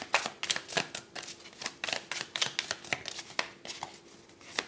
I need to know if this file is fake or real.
real